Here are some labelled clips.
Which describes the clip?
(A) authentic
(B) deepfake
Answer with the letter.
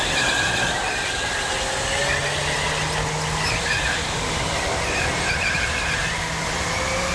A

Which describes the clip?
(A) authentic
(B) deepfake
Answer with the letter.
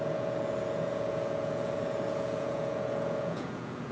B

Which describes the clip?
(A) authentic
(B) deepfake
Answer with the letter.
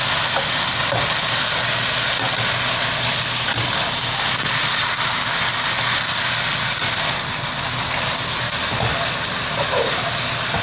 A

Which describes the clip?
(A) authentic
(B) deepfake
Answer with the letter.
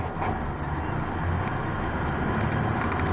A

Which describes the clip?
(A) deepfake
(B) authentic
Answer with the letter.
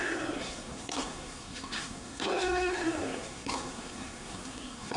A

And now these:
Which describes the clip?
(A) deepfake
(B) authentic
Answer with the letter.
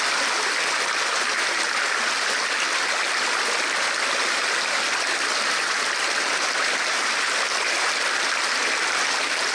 B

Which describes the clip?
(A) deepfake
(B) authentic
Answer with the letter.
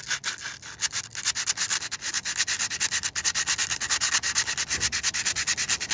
B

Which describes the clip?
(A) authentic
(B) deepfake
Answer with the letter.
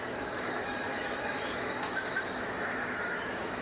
B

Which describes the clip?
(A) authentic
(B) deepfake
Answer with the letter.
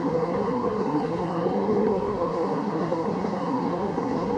B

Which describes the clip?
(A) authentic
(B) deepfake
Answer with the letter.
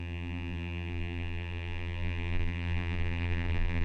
B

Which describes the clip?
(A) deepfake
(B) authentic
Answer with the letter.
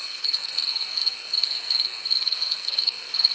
A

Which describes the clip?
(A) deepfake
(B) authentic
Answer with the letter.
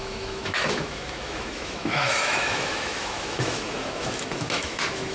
A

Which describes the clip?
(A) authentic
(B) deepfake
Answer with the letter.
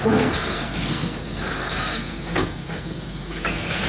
B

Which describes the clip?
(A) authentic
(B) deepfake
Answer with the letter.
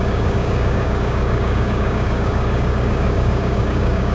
B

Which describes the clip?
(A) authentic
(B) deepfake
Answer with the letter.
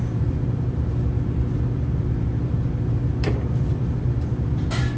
B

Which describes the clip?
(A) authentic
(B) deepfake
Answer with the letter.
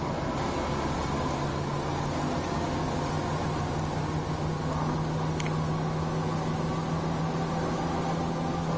A